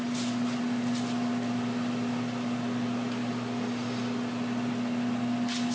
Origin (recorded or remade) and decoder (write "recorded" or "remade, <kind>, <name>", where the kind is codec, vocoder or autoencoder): recorded